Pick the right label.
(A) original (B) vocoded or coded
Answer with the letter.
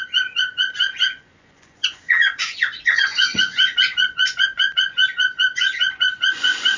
B